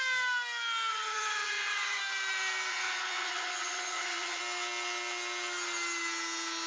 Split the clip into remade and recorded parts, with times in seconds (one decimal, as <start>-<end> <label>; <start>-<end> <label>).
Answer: 0.0-0.9 recorded; 0.9-2.0 remade; 2.0-2.7 recorded; 2.7-4.4 remade; 4.4-6.7 recorded

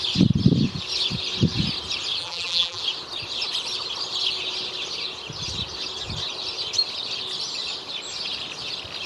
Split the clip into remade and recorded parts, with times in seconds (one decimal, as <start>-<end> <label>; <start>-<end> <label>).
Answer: 0.0-2.2 recorded; 2.2-2.8 remade; 2.8-9.1 recorded

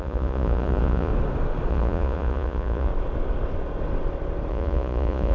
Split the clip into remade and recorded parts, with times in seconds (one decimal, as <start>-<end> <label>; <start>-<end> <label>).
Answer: 0.0-1.1 remade; 1.1-1.7 recorded; 1.7-2.9 remade; 2.9-4.5 recorded; 4.5-5.3 remade